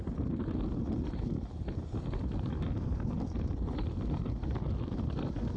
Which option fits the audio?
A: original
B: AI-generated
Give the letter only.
A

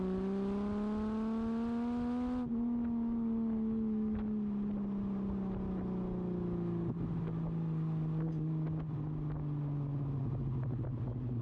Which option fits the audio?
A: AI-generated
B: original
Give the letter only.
B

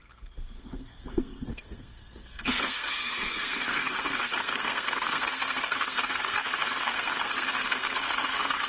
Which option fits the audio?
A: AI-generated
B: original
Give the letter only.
A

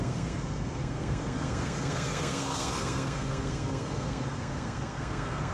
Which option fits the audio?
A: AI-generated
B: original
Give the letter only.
A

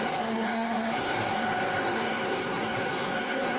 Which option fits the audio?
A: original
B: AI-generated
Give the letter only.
B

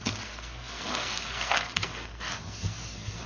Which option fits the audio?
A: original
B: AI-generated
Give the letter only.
B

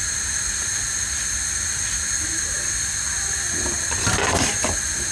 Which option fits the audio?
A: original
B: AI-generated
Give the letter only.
A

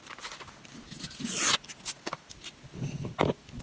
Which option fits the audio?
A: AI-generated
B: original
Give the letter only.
B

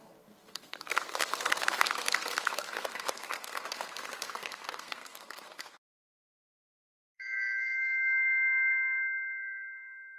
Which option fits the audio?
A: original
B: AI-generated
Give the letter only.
B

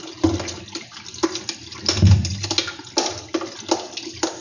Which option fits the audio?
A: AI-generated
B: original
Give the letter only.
B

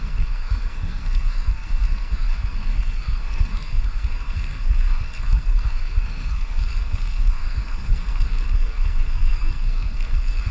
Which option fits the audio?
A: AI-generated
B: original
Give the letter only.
A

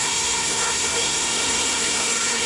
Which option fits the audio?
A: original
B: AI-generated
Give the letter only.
B